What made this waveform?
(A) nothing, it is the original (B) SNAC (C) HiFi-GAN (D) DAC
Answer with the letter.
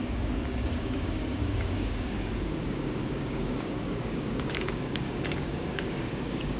D